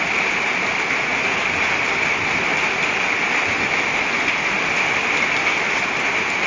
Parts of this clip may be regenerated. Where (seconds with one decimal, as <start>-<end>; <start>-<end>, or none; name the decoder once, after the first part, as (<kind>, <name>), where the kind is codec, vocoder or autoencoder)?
none